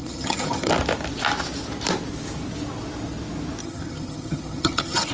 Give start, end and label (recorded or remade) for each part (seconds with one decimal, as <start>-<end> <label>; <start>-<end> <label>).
0.0-0.7 remade; 0.7-3.6 recorded; 3.6-5.1 remade